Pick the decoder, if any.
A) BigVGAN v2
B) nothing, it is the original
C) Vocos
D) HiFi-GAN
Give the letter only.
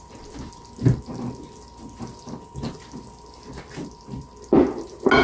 B